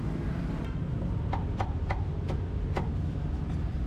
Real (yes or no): yes